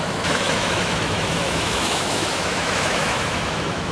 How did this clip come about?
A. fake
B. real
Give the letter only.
A